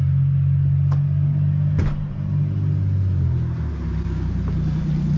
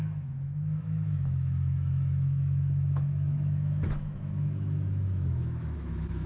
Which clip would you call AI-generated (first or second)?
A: second